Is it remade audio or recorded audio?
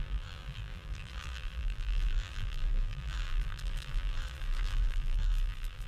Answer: remade